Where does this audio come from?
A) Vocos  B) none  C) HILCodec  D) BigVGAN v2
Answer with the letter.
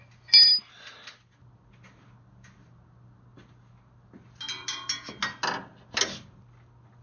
B